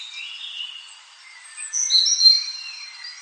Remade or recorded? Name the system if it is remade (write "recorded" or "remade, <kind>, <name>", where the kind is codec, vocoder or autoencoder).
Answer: recorded